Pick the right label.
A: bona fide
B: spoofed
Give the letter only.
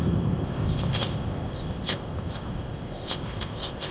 B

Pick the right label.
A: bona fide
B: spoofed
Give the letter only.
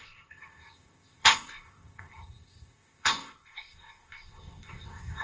B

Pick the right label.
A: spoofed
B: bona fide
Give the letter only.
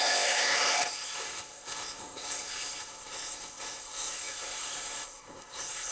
A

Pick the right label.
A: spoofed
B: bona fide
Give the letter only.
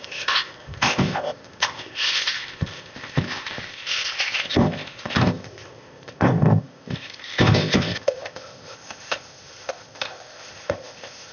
A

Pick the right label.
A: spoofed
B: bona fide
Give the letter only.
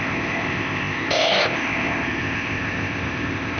A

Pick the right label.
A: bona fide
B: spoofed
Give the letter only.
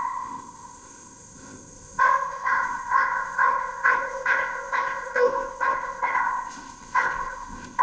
B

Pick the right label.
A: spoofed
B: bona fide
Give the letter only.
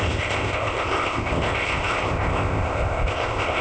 A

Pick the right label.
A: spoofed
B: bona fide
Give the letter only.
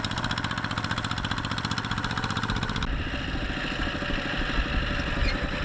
B